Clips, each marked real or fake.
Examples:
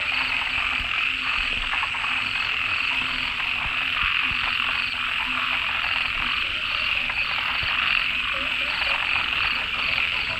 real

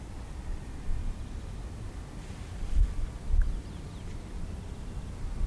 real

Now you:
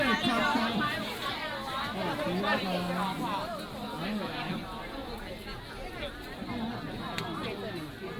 real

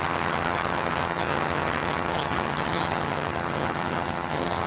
fake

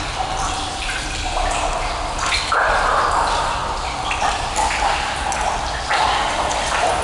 real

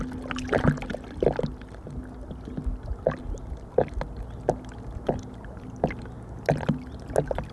real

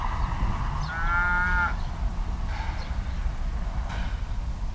real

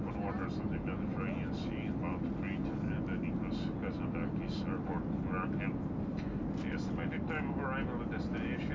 real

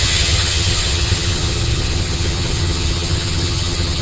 fake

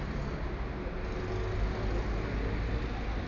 real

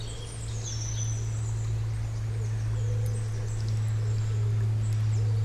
real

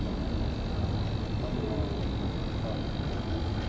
real